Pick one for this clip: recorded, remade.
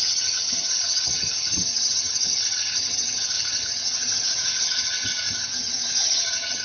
remade